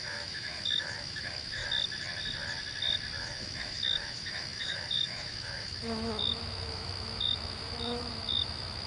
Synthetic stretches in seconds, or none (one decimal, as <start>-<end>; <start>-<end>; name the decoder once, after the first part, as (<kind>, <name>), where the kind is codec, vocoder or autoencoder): 0.0-1.6 (autoencoder, DAC-VAE); 3.2-8.9